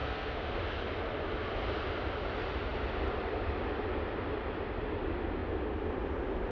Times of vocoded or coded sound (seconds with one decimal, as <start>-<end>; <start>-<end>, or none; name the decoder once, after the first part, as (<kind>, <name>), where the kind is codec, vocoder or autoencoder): 0.0-0.6 (codec, SNAC)